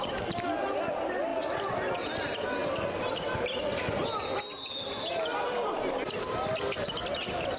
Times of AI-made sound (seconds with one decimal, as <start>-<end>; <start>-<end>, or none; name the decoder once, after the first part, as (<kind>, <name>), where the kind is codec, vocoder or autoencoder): none